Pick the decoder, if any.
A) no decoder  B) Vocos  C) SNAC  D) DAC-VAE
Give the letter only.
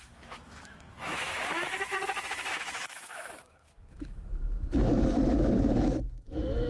D